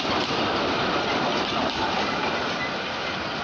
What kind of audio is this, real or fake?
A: real